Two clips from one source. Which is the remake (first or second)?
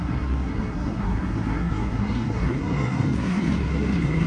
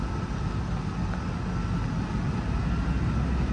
first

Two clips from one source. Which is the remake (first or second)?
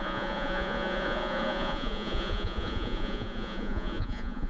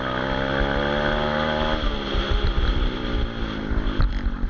first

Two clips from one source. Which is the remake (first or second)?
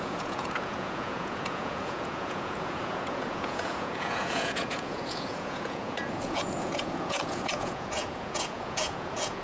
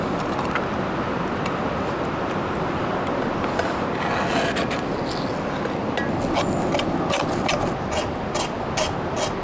first